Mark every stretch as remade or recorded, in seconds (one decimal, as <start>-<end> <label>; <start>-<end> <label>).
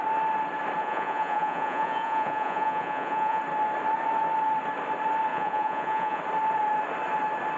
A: 0.0-0.8 recorded; 0.8-3.4 remade; 3.4-5.3 recorded; 5.3-6.2 remade; 6.2-7.6 recorded